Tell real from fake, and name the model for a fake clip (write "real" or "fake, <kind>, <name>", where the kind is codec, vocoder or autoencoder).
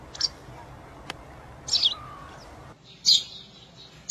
real